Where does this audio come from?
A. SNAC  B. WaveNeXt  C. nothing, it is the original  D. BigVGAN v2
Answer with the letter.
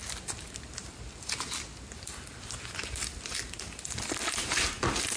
C